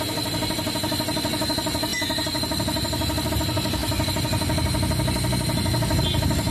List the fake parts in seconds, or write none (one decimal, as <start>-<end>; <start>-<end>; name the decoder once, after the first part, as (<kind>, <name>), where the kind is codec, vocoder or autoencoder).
0.0-3.8 (vocoder, BigVGAN v2); 6.0-6.5